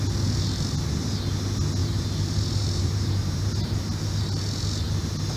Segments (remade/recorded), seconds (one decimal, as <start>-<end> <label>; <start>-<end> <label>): 0.0-1.8 recorded; 1.8-3.5 remade; 3.5-5.4 recorded